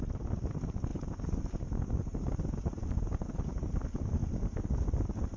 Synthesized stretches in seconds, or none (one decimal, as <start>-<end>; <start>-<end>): none